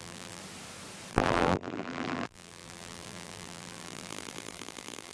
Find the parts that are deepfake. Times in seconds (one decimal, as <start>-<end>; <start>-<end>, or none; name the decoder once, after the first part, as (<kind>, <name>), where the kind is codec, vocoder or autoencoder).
0.0-0.4 (vocoder, BigVGAN v2); 1.1-5.1